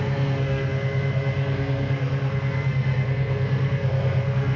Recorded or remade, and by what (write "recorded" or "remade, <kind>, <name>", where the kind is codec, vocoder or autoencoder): remade, codec, SNAC